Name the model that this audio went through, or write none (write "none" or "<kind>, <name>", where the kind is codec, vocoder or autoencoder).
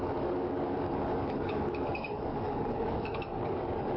codec, DAC